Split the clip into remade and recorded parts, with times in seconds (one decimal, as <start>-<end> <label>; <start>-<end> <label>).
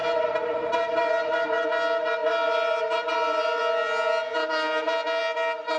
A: 0.0-1.1 remade; 1.1-2.2 recorded; 2.2-3.6 remade; 3.6-5.8 recorded